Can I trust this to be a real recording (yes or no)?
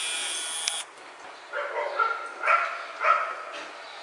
yes